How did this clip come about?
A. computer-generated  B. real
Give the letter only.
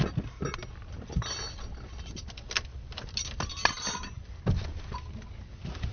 B